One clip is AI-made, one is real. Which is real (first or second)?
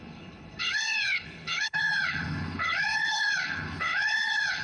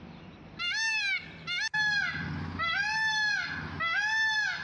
second